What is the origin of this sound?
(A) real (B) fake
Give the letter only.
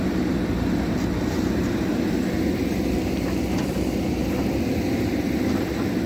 B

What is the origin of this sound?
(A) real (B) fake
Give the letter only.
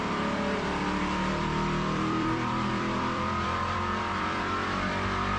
B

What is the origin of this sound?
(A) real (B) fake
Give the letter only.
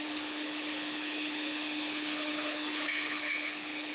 B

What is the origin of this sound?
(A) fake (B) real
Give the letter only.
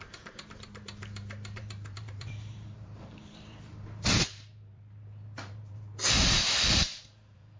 A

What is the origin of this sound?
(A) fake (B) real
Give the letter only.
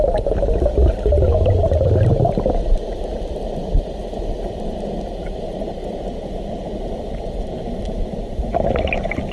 B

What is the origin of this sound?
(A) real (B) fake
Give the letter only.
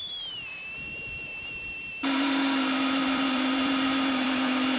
B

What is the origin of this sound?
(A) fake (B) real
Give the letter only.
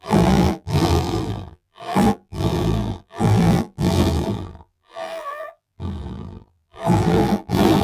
A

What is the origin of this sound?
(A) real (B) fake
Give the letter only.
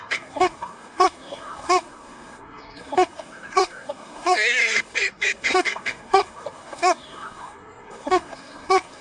B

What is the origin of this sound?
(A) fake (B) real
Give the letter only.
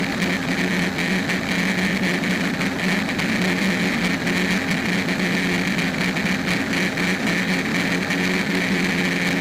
B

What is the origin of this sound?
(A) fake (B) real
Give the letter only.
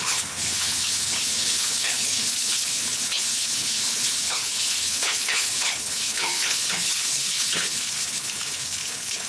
A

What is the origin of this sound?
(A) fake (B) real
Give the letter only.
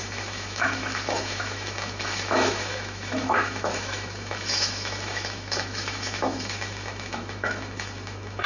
A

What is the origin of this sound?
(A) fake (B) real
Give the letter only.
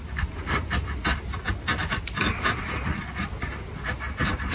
B